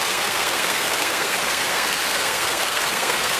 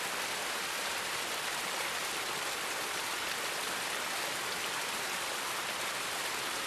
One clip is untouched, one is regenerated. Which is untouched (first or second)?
second